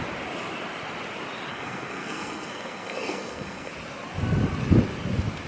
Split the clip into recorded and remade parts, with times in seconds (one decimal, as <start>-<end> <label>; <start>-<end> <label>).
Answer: 0.0-1.5 recorded; 1.5-3.7 remade; 3.7-5.5 recorded